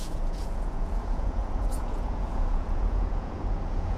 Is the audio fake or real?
fake